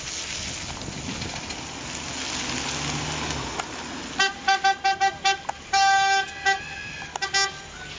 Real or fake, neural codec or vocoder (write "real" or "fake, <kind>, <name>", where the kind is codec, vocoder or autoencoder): real